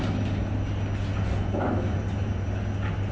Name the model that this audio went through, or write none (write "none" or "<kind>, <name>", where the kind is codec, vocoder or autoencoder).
none